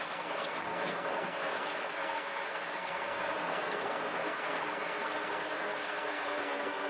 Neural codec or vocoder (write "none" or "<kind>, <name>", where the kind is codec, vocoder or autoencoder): codec, SNAC